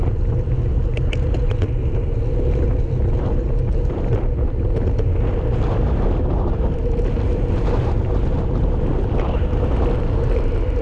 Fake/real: real